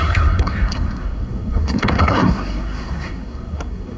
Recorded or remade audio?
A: remade